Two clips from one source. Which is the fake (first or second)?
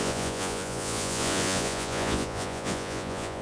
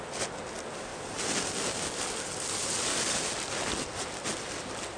first